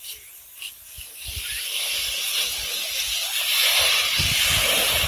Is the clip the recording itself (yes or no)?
yes